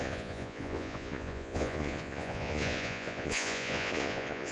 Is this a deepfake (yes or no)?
yes